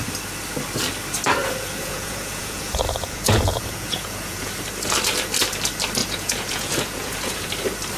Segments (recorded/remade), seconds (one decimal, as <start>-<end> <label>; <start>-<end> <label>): 0.0-1.8 recorded; 1.8-4.5 remade; 4.5-6.0 recorded; 6.0-7.5 remade; 7.5-8.0 recorded